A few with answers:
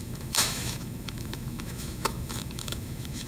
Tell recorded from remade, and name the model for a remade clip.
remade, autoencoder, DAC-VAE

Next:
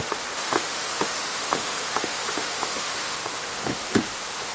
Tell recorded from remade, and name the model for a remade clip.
remade, autoencoder, DAC-VAE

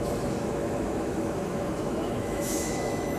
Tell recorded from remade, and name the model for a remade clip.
remade, autoencoder, DAC-VAE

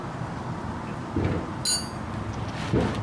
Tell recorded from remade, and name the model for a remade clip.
recorded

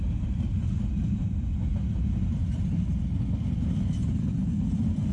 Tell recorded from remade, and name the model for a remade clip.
recorded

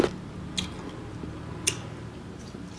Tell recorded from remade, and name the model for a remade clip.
recorded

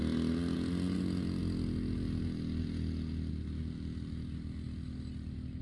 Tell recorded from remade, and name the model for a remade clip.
recorded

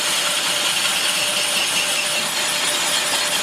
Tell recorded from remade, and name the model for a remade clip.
recorded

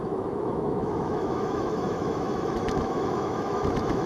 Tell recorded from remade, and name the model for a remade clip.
remade, autoencoder, DAC-VAE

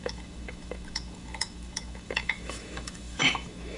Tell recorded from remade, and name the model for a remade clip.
remade, autoencoder, DAC-VAE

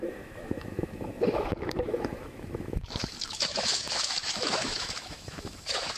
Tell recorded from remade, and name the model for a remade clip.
remade, autoencoder, DAC-VAE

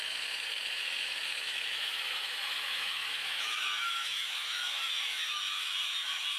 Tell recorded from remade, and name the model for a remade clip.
remade, autoencoder, DAC-VAE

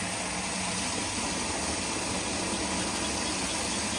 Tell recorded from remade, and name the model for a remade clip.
recorded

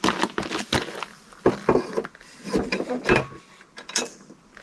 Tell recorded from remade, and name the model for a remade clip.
recorded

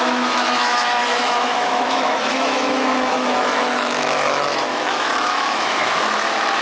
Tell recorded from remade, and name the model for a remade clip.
remade, autoencoder, DAC-VAE